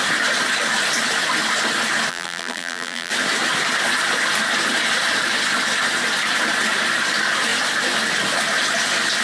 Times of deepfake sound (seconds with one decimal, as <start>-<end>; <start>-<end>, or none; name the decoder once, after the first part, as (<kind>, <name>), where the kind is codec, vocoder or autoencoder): 2.1-3.1 (vocoder, BigVGAN v2)